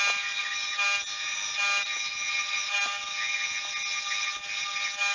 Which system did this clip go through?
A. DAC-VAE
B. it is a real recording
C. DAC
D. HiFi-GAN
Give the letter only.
B